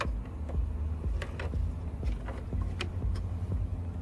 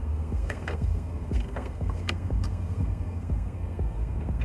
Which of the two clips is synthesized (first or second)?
second